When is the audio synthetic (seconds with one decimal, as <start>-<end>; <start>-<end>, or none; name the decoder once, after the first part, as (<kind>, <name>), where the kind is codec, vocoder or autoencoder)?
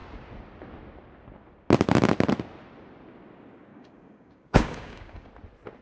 3.7-5.3 (codec, DAC)